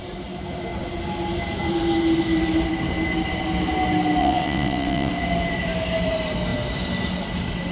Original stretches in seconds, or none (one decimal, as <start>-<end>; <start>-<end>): 0.0-4.2; 5.1-7.7